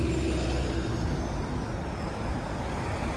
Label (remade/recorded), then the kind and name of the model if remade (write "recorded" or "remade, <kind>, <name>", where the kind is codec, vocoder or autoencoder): recorded